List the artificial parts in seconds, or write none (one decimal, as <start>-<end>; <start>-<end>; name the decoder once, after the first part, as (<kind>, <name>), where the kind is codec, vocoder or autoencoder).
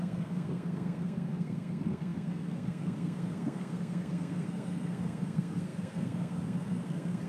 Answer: 0.0-7.3 (codec, SNAC)